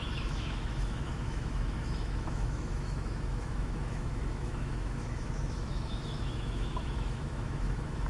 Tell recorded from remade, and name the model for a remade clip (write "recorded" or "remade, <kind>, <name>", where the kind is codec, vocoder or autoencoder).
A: remade, autoencoder, DAC-VAE